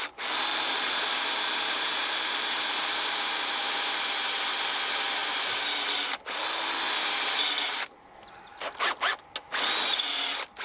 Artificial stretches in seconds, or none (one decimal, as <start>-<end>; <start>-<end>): 0.5-3.9